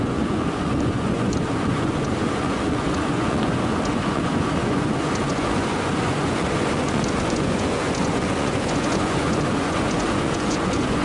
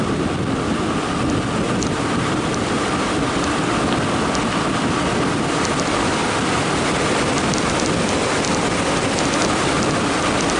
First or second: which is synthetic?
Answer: first